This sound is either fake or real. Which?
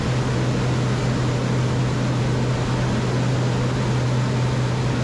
real